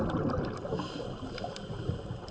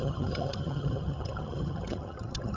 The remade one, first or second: second